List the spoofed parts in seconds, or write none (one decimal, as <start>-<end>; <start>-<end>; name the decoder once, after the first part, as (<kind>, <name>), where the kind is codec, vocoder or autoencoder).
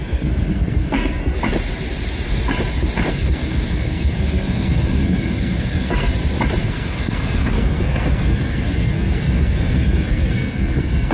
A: 0.0-1.2 (codec, SNAC); 3.1-6.1; 6.6-11.1